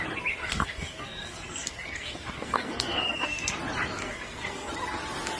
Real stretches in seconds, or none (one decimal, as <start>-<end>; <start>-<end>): 0.0-0.4; 3.6-4.0; 4.7-5.4